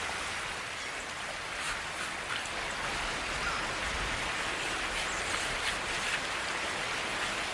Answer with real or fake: real